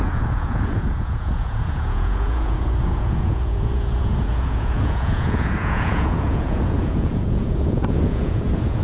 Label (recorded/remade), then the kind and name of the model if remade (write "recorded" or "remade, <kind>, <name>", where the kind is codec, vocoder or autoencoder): remade, vocoder, Vocos